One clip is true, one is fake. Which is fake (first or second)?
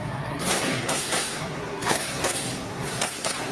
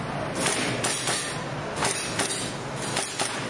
first